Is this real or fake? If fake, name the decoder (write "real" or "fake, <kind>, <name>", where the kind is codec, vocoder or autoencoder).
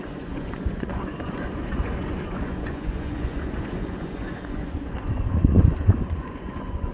fake, vocoder, Vocos